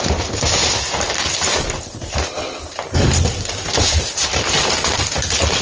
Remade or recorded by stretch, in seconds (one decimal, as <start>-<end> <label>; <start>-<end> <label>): 0.0-5.6 recorded